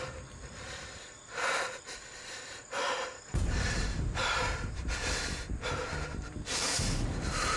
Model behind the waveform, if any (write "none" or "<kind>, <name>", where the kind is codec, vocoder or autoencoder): vocoder, BigVGAN v2